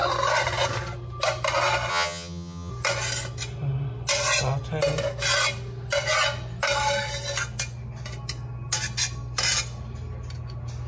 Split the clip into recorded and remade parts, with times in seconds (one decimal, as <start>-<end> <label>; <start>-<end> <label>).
0.0-1.9 recorded; 1.9-2.7 remade; 2.7-10.9 recorded